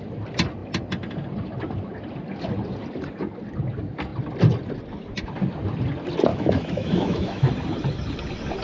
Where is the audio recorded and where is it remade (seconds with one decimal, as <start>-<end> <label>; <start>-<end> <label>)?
0.0-6.3 recorded; 6.3-7.5 remade; 7.5-8.6 recorded

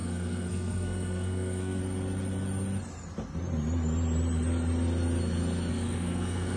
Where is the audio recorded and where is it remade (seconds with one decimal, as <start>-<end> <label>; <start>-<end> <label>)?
0.0-1.8 remade; 1.8-5.7 recorded; 5.7-6.6 remade

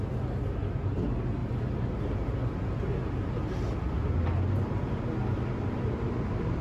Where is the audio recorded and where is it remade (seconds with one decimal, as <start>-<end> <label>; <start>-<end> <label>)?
0.0-6.6 recorded